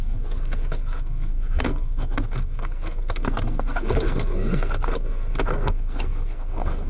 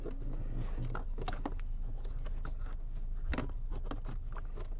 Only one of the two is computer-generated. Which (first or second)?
first